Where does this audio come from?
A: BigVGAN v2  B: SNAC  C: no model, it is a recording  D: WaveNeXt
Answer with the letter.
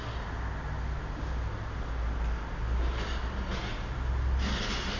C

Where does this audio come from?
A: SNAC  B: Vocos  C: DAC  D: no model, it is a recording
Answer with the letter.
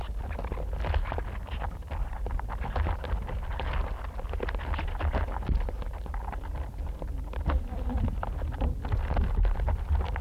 D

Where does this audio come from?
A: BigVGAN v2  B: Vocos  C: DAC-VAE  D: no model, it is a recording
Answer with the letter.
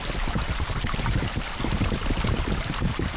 D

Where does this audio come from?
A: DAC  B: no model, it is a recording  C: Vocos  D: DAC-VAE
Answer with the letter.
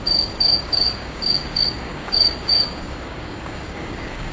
A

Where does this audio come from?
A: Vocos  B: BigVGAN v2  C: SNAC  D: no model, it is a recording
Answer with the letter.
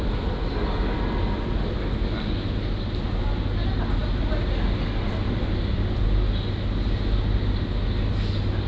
D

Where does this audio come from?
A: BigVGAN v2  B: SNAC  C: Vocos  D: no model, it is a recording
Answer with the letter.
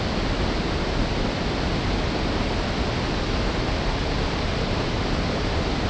D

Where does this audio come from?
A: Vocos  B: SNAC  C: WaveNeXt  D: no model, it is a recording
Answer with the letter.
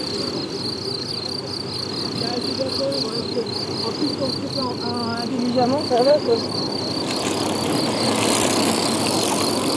D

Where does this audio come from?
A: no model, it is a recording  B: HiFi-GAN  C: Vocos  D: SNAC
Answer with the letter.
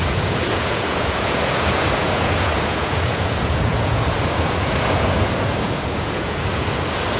C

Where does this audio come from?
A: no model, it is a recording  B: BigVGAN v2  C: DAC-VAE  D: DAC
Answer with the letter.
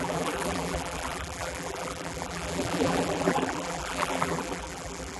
B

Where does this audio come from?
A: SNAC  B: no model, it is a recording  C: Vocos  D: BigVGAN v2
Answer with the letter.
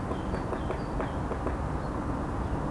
B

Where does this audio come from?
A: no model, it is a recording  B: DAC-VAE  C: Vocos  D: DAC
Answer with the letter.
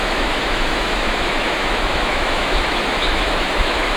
B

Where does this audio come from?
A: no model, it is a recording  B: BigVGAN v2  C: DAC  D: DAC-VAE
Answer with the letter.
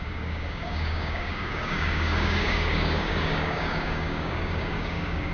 C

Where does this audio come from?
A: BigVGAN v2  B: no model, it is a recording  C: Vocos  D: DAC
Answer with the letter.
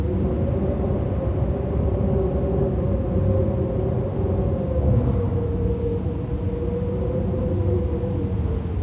B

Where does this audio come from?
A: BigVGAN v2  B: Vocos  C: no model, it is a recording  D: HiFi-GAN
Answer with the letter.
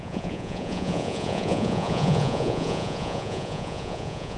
B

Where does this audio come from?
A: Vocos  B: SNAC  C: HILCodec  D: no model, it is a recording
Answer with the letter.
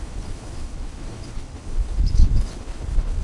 C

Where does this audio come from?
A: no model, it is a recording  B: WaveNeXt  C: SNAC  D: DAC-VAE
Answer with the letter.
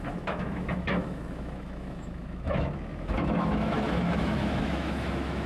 D